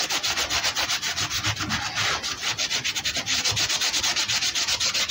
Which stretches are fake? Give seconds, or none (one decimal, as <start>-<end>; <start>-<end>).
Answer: none